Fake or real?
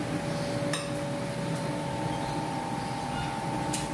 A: real